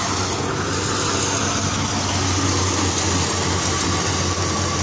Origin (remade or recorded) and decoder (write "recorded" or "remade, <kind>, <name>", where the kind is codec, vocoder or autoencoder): recorded